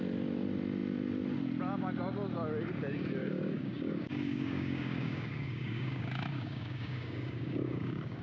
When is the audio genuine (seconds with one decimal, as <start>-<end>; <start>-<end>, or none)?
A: 0.0-3.2